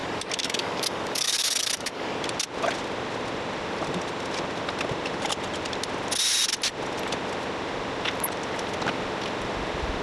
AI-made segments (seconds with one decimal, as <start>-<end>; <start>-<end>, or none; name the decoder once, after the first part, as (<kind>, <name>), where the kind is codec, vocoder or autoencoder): 0.0-2.2 (codec, DAC)